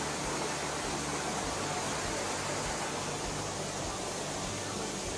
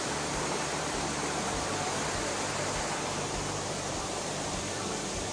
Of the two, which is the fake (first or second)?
second